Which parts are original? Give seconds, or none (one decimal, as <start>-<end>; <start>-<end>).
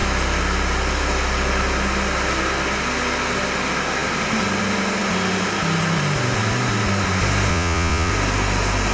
0.0-7.5; 8.1-8.9